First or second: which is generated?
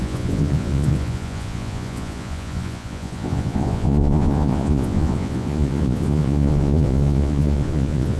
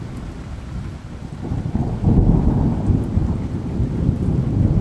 first